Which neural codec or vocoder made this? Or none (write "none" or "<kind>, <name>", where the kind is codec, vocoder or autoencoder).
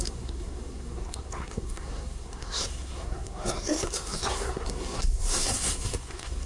codec, SNAC